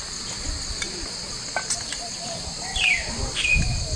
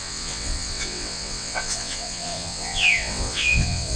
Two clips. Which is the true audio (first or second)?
first